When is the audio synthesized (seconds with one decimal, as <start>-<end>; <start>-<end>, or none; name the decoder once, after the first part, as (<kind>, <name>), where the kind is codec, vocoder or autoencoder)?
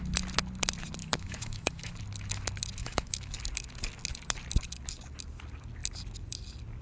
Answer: 1.0-1.9 (autoencoder, DAC-VAE); 2.8-3.3